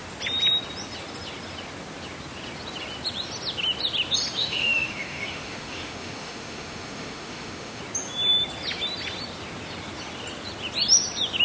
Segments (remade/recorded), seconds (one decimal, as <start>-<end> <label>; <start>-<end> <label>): 0.0-4.4 recorded; 4.4-7.8 remade; 7.8-11.4 recorded